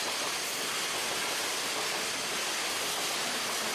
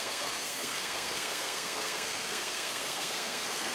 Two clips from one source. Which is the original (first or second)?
first